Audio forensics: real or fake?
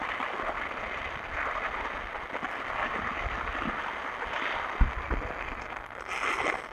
real